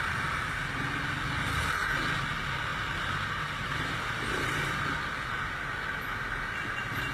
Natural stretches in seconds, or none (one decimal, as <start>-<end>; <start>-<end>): 0.0-2.7; 4.8-7.1